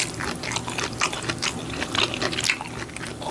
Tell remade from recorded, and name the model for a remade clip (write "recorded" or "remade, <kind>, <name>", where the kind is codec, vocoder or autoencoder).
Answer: recorded